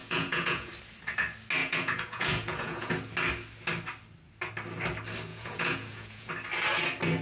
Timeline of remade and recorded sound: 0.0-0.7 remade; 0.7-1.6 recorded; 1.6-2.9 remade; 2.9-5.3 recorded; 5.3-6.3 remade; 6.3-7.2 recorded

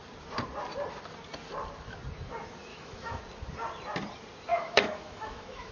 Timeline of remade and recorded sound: 0.0-2.7 recorded; 2.7-3.2 remade; 3.2-4.5 recorded; 4.5-5.7 remade

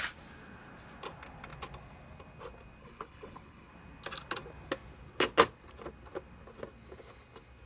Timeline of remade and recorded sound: 0.0-2.8 recorded; 2.8-3.7 remade; 3.7-7.7 recorded

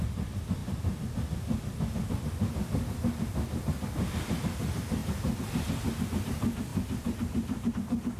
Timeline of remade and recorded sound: 0.0-6.7 recorded; 6.7-7.7 remade; 7.7-8.2 recorded

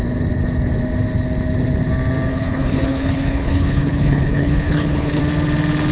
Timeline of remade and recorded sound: 0.0-2.3 recorded; 2.3-5.2 remade; 5.2-5.9 recorded

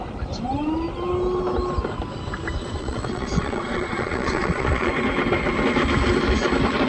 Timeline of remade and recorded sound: 0.0-2.6 recorded; 2.6-4.9 remade; 4.9-6.9 recorded

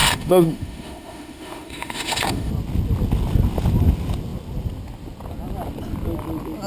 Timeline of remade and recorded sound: 0.0-2.5 remade; 2.5-6.7 recorded

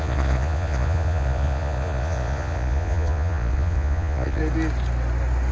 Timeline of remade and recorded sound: 0.0-4.4 remade; 4.4-5.5 recorded